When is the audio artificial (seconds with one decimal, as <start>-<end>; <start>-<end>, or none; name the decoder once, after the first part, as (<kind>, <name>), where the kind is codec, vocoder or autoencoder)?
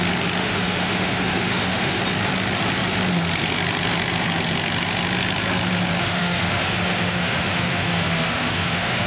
0.4-2.0 (autoencoder, DAC-VAE); 6.0-9.1